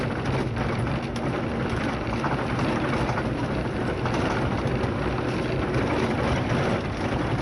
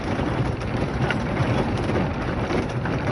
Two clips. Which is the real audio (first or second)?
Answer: first